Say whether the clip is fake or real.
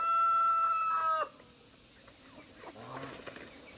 real